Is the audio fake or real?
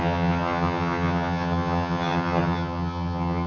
fake